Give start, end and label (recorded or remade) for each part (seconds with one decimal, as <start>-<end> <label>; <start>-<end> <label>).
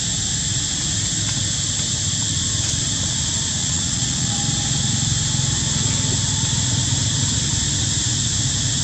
0.0-3.6 recorded; 3.6-4.4 remade; 4.4-8.8 recorded